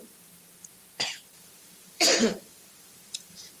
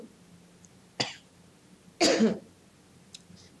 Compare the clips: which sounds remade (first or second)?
first